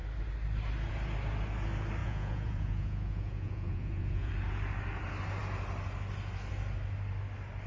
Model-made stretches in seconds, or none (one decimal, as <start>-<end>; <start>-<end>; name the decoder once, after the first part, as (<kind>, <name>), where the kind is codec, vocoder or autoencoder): 2.0-4.3 (vocoder, Vocos)